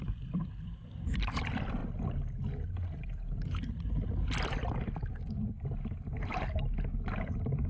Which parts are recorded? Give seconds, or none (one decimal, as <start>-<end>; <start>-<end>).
1.8-4.1; 6.3-7.1